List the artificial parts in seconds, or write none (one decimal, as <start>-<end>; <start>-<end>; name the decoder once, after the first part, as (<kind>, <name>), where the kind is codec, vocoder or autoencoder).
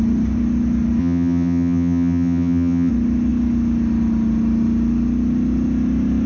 1.0-2.9 (vocoder, HiFi-GAN)